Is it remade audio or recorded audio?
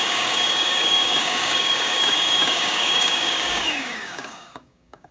remade